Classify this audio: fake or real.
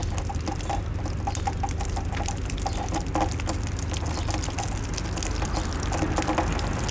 real